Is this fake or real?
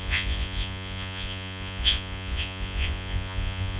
fake